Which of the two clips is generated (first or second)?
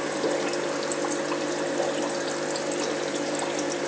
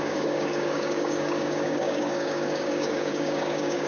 second